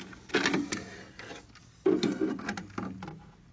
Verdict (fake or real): real